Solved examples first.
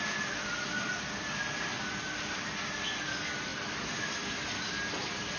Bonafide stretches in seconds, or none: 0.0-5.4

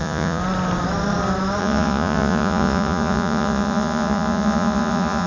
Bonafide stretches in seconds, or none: 0.4-1.6

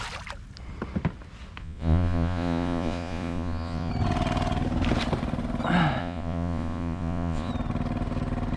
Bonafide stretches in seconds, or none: 0.0-1.6; 3.9-6.0; 7.5-8.6

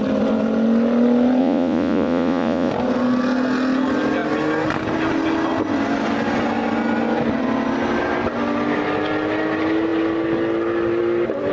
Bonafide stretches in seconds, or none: 0.0-1.4; 2.7-11.5

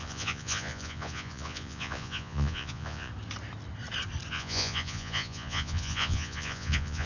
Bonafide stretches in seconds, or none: 3.1-4.3

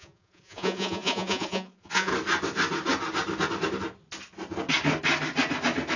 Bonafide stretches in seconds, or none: 2.1-6.0

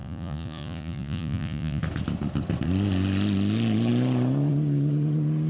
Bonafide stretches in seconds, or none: 1.8-5.5